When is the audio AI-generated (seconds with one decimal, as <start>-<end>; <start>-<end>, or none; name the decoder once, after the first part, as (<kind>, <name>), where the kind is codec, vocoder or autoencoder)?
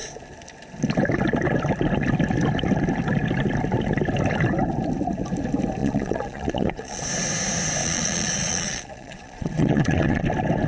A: 5.8-7.0 (vocoder, Vocos); 7.8-10.2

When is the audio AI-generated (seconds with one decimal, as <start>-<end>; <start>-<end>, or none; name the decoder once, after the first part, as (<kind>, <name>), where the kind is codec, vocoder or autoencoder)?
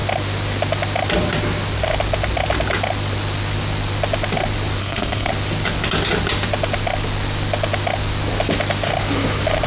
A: 4.8-5.3 (codec, SNAC)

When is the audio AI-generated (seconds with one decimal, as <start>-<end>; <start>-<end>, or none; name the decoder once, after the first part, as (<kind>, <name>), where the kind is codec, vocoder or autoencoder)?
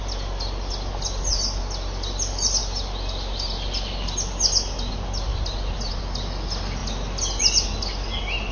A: none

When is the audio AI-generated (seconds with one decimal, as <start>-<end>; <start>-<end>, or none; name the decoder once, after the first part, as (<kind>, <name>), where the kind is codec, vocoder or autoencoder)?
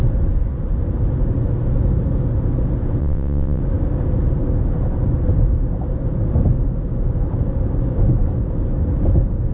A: 3.0-3.6 (vocoder, WaveNeXt)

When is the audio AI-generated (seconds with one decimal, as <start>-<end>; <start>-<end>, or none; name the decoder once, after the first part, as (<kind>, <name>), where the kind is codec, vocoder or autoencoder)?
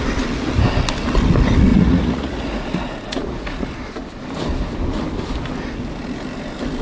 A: 1.7-3.7 (vocoder, Vocos)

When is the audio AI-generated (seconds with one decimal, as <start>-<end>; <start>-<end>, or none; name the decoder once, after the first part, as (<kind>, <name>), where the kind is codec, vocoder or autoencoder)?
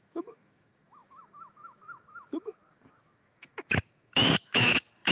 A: 0.0-5.1 (autoencoder, DAC-VAE)